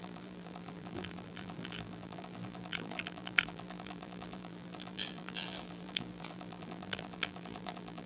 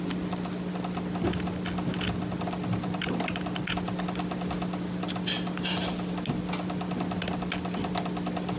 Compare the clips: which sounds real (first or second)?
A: second